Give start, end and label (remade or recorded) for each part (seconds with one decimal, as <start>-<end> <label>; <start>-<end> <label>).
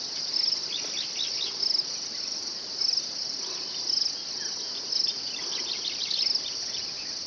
0.0-7.3 recorded